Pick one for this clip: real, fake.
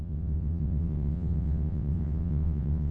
fake